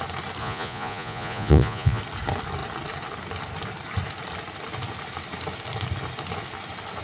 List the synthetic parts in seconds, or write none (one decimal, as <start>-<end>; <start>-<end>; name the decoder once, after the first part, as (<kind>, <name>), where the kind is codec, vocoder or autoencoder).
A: 0.4-2.0 (vocoder, Vocos)